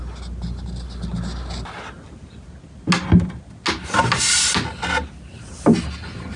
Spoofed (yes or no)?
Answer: no